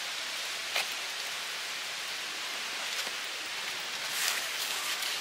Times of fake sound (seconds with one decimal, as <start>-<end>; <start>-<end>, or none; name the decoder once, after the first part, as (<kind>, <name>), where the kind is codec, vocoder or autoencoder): 4.2-5.2 (codec, DAC)